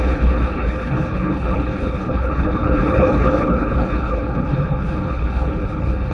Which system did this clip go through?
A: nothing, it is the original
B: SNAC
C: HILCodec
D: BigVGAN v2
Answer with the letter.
C